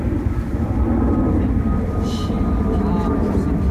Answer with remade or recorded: recorded